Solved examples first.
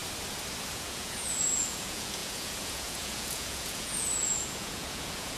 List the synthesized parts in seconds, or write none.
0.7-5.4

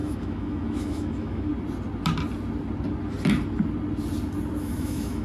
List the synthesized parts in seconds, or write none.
0.0-1.5; 4.6-5.2

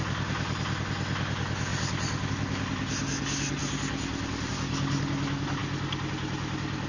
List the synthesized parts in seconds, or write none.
none

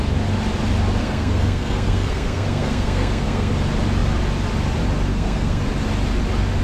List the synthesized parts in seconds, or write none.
1.0-3.5; 5.1-5.6

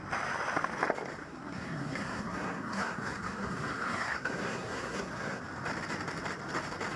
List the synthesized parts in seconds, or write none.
1.2-5.4

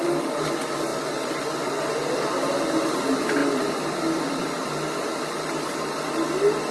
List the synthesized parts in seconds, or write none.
none

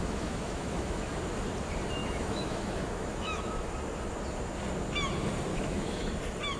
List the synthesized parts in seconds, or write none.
0.0-1.1; 2.0-3.7; 5.5-6.1

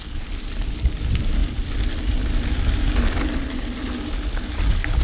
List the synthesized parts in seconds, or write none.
none